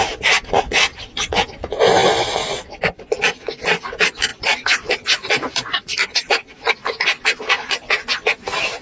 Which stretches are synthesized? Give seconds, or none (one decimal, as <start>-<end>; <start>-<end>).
2.0-3.0; 4.3-6.7